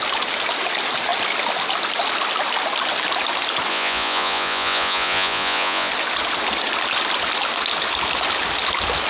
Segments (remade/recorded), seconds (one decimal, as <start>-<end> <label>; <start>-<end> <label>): 0.0-3.7 recorded; 3.7-5.9 remade; 5.9-9.1 recorded